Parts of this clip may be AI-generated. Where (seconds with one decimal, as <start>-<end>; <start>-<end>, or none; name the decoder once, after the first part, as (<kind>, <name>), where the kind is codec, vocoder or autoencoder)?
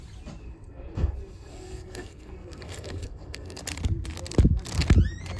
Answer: 0.4-3.6 (codec, SNAC)